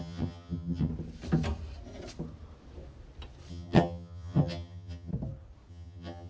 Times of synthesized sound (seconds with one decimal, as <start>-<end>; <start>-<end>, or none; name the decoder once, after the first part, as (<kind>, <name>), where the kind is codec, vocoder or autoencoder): 0.0-0.9 (vocoder, HiFi-GAN); 3.5-5.1; 5.7-6.3